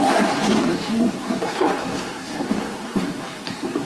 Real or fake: fake